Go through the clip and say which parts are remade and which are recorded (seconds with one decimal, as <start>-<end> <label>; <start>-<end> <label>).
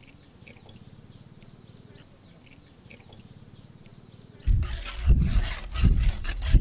0.0-6.6 recorded